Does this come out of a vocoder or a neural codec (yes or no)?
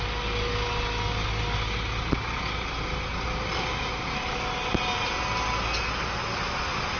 no